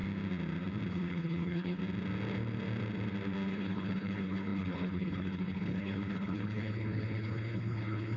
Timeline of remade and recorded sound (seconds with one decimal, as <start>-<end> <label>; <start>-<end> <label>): 0.0-0.9 recorded; 0.9-1.8 remade; 1.8-3.5 recorded; 3.5-8.2 remade